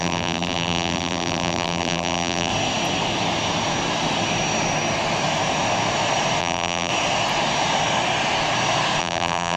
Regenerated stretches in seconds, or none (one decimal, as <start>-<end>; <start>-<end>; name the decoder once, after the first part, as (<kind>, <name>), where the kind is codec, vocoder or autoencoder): 0.0-2.5 (vocoder, BigVGAN v2); 6.4-6.9; 9.0-9.6